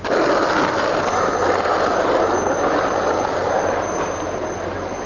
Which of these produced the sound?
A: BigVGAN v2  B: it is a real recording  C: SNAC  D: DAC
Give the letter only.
B